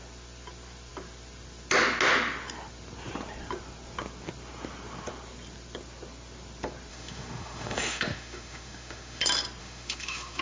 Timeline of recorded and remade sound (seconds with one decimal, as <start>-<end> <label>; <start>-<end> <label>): 0.0-6.9 recorded; 6.9-9.2 remade; 9.2-9.6 recorded; 9.6-10.4 remade